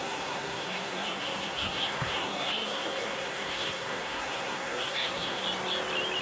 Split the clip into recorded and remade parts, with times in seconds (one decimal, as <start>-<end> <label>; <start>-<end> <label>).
0.0-5.4 remade; 5.4-6.2 recorded